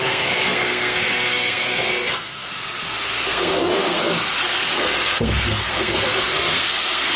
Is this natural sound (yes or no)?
no